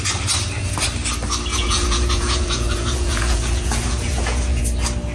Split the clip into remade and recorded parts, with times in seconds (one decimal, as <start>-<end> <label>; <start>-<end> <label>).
0.0-1.5 recorded; 1.5-4.6 remade; 4.6-5.1 recorded